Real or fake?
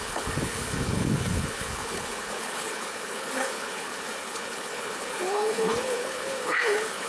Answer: fake